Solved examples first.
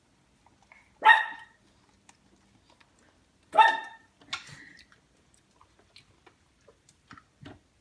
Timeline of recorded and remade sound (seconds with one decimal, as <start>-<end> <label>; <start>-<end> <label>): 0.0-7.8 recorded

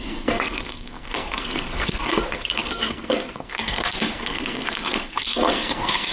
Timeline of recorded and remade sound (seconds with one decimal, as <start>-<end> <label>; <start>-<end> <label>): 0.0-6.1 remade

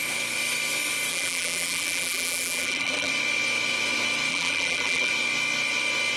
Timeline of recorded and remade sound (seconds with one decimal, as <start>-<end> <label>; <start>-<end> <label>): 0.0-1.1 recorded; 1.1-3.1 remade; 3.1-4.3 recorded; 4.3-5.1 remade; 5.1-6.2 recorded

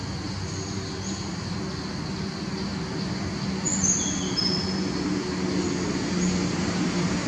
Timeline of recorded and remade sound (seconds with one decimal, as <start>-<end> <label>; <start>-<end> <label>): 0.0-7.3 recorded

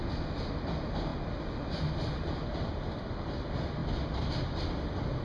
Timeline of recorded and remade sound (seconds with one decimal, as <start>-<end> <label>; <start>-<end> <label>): 0.0-5.2 recorded